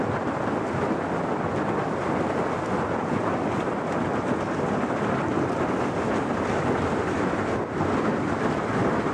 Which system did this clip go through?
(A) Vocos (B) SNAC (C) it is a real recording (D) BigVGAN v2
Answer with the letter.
C